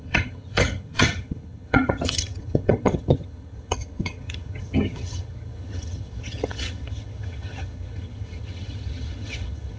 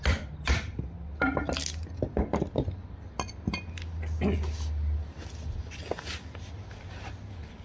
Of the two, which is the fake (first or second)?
first